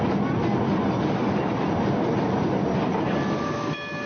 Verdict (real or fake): real